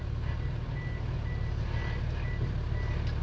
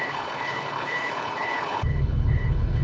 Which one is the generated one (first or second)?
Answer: second